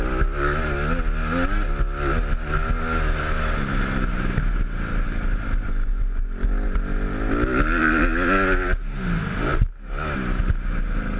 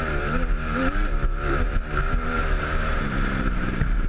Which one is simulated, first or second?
second